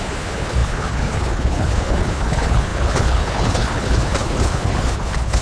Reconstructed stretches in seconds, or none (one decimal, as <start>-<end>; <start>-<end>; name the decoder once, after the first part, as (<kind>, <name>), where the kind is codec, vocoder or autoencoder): 0.0-5.4 (codec, HILCodec)